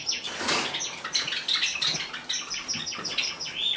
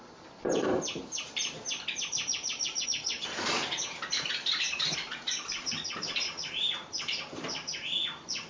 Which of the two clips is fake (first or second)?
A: second